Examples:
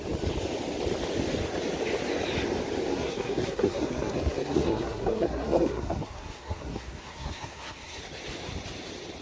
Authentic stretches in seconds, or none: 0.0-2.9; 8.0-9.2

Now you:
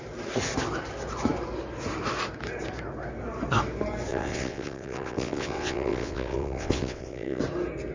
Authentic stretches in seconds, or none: 0.0-4.1; 7.4-7.9

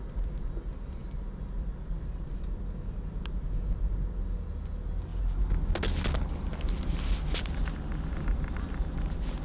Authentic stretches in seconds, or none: 0.0-9.4